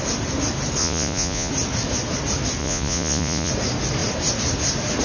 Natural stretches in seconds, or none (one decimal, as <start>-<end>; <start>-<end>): 0.0-0.8; 1.5-2.6; 3.5-5.0